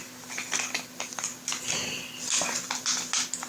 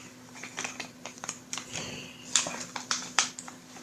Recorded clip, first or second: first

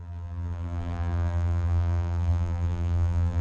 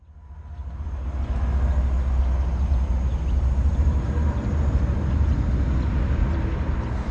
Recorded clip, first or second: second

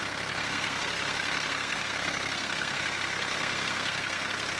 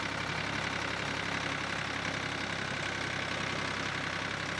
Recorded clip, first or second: second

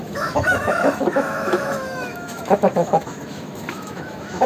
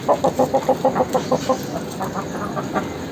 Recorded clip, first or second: second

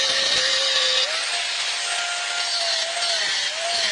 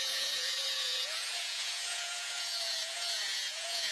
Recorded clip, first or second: first